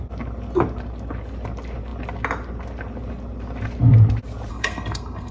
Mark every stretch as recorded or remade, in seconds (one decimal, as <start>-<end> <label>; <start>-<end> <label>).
0.0-4.5 recorded; 4.5-5.3 remade